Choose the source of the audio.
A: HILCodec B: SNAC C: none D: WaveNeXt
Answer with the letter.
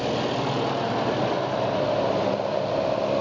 C